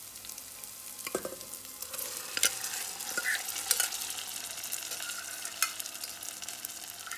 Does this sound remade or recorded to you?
recorded